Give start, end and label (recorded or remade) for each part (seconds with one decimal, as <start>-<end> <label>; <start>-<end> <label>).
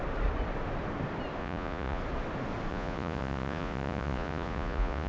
0.0-1.4 recorded; 1.4-2.0 remade; 2.0-2.7 recorded; 2.7-5.1 remade